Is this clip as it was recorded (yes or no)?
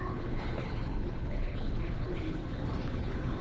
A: no